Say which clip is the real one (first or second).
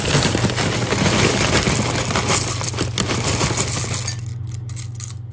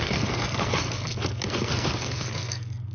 first